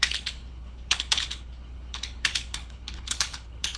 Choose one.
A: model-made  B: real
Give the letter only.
A